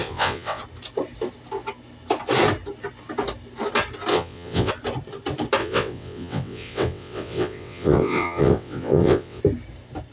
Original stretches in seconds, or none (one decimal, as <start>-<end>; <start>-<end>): 0.6-4.1; 4.7-5.6; 9.4-10.1